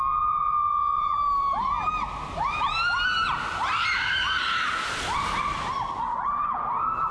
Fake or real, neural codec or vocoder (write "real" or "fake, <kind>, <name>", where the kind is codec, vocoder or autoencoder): real